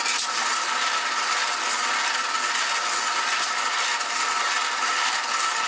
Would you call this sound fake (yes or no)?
no